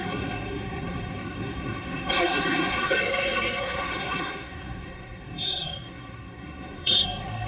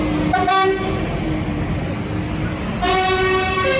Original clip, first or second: second